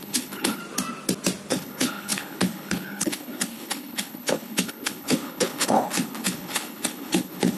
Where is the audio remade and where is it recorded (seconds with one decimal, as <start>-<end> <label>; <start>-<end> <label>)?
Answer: 0.0-0.6 remade; 0.6-1.5 recorded; 1.5-7.6 remade